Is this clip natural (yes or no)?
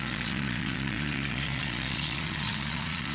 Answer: no